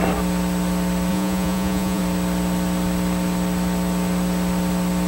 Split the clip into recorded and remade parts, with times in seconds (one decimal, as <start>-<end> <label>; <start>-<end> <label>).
0.0-1.1 recorded; 1.1-2.0 remade; 2.0-5.1 recorded